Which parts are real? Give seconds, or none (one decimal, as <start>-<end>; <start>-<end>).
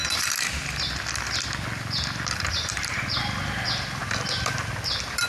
0.0-5.3